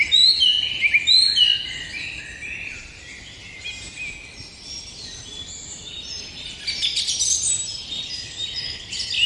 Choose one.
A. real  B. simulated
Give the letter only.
A